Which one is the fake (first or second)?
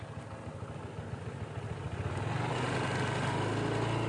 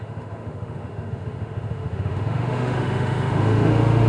second